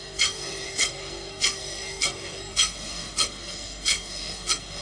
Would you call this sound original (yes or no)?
no